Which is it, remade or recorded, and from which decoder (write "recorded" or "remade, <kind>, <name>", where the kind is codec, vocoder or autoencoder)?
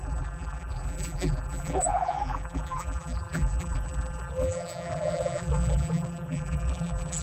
remade, vocoder, BigVGAN v2